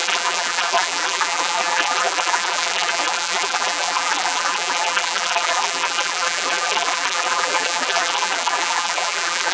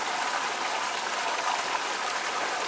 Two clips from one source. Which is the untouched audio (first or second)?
second